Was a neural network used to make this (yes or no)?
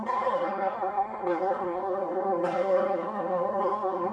yes